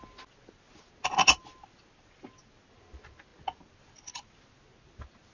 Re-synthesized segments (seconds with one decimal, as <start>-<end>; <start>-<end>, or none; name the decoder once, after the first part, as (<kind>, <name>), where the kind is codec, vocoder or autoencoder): none